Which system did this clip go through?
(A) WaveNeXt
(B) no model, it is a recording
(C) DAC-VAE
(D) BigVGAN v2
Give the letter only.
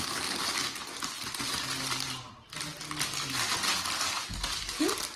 B